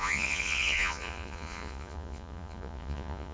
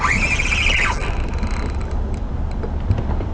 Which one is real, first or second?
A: second